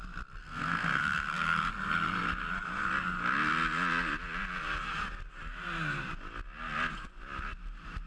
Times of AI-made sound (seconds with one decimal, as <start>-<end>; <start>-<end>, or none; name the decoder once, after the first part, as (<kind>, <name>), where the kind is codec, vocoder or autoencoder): 0.4-1.7 (codec, SNAC)